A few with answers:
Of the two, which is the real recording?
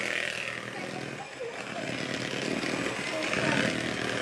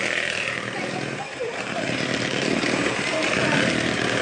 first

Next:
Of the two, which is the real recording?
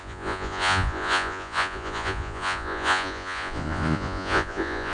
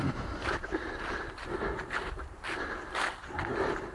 second